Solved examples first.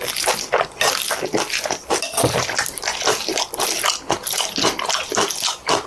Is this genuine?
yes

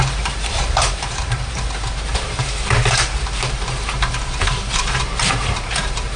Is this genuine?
no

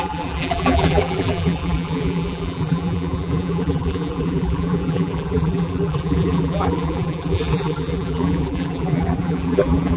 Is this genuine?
no